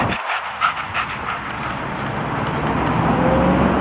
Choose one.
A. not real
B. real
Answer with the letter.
B